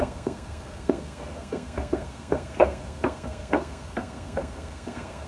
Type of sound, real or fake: fake